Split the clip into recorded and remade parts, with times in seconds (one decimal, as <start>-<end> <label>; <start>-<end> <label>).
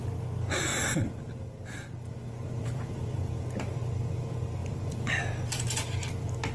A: 0.0-0.7 recorded; 0.7-3.5 remade; 3.5-4.6 recorded; 4.6-5.2 remade; 5.2-6.5 recorded